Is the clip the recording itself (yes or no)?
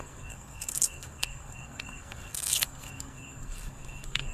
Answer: no